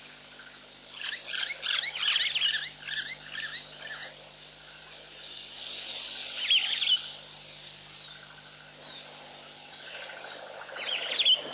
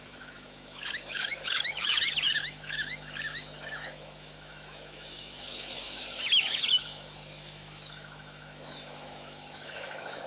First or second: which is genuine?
first